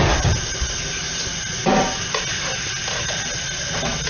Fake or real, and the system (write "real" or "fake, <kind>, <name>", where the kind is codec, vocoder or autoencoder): real